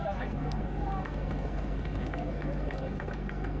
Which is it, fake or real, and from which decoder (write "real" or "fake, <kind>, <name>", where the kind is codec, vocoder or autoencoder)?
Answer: fake, codec, SNAC